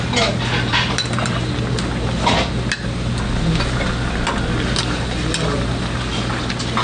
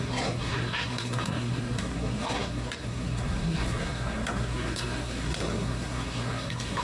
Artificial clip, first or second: second